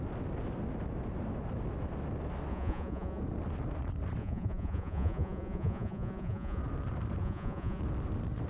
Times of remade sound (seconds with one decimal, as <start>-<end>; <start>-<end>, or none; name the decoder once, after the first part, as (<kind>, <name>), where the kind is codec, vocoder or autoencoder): 2.5-3.2 (vocoder, Vocos); 4.2-6.6; 7.2-7.8